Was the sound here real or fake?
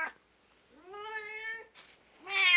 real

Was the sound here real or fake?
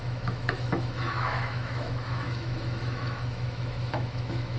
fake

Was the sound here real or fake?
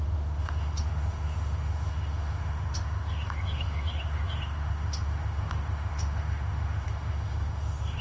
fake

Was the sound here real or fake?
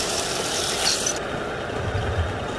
real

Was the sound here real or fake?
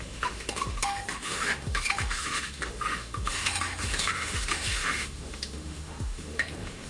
fake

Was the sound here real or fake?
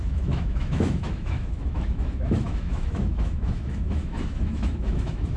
fake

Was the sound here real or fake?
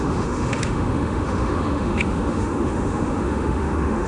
fake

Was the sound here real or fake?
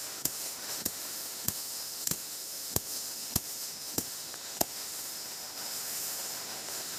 fake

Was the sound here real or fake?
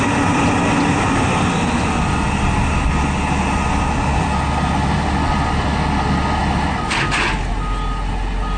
real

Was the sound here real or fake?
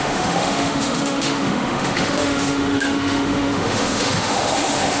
fake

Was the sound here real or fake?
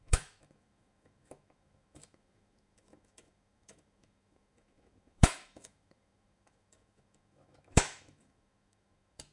fake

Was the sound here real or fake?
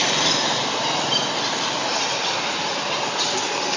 real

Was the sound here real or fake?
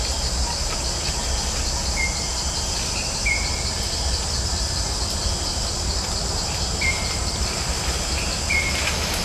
real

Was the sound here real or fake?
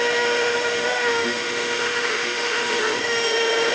fake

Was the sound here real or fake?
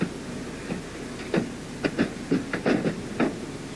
real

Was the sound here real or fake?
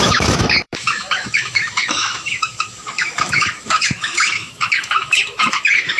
fake